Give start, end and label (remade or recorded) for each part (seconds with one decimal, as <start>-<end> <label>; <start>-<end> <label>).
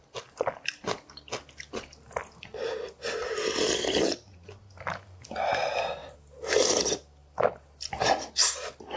0.0-6.0 recorded; 6.0-6.8 remade; 6.8-7.2 recorded; 7.2-8.2 remade; 8.2-9.0 recorded